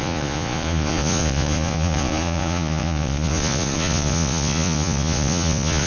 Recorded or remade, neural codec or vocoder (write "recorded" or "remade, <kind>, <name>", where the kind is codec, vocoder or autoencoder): remade, vocoder, Vocos